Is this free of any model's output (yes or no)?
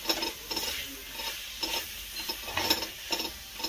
yes